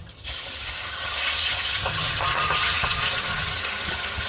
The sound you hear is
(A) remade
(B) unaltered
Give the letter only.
A